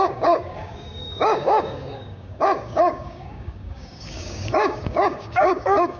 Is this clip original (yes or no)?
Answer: no